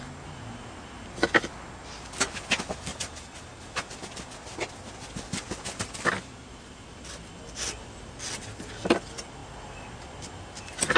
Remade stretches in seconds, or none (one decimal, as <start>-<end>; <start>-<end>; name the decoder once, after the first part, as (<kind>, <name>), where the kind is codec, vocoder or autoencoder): none